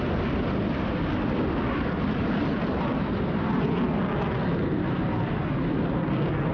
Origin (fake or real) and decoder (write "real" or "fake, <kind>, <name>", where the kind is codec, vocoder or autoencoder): real